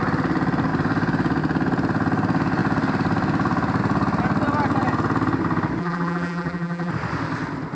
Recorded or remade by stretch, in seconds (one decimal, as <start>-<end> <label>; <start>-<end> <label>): 0.0-5.8 recorded; 5.8-6.9 remade; 6.9-7.8 recorded